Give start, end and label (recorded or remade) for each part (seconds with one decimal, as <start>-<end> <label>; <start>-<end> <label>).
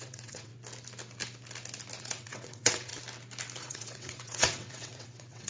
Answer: 0.0-0.5 remade; 0.5-2.0 recorded; 2.0-2.9 remade; 2.9-3.6 recorded; 3.6-5.5 remade